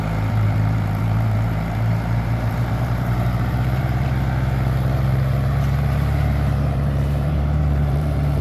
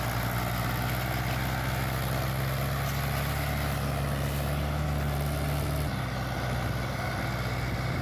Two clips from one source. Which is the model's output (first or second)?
first